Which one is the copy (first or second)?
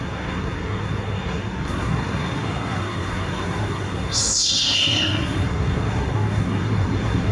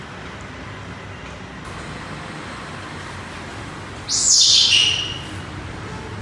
first